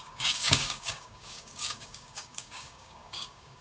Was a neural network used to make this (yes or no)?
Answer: yes